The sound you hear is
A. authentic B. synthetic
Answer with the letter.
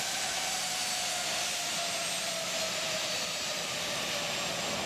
A